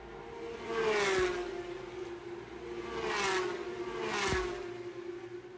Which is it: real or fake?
real